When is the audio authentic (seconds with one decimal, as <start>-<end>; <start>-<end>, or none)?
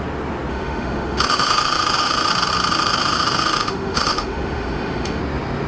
0.0-0.5; 2.3-2.7; 5.2-5.7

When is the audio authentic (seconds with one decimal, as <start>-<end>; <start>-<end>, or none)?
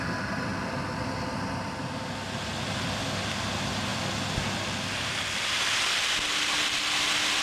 0.0-7.4